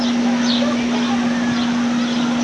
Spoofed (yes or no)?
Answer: no